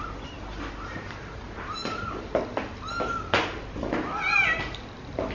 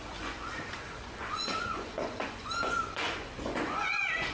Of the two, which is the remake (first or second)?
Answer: second